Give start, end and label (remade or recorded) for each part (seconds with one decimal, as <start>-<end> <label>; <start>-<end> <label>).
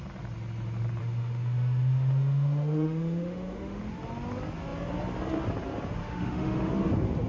0.0-1.0 recorded; 1.0-3.8 remade; 3.8-6.0 recorded; 6.0-6.7 remade; 6.7-7.3 recorded